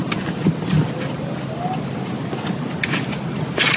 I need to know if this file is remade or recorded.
recorded